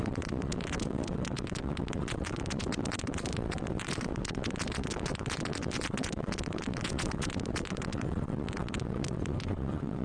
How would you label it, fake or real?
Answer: fake